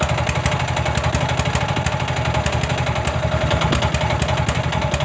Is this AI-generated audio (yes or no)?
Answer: no